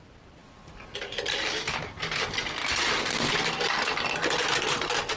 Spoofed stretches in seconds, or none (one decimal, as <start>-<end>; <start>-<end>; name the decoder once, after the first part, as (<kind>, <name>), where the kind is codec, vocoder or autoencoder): none